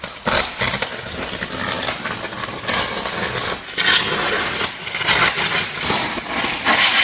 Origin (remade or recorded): recorded